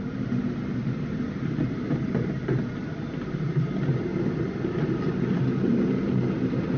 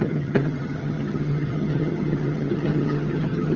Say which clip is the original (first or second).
first